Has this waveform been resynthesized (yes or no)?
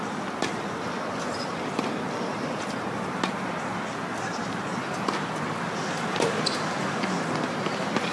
no